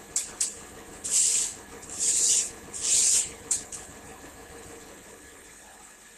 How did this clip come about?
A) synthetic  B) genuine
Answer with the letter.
A